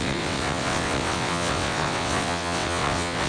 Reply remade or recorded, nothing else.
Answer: remade